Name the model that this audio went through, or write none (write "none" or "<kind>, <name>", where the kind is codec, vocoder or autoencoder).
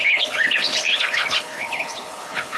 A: codec, HILCodec